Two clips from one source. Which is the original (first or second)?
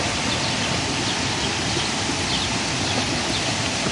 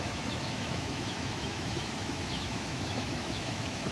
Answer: first